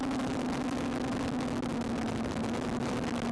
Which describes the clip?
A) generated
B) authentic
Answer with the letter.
B